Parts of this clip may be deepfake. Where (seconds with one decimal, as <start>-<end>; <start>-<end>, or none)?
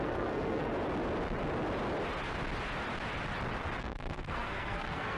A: 0.0-0.7; 3.8-5.2